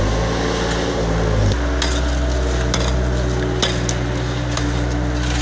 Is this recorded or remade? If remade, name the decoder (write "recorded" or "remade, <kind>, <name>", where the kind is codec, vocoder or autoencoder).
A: recorded